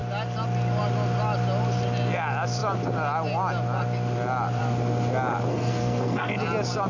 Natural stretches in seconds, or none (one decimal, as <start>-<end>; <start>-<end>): 0.0-5.5; 6.3-6.9